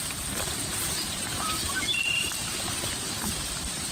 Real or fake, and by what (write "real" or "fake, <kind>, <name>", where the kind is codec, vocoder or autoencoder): fake, vocoder, BigVGAN v2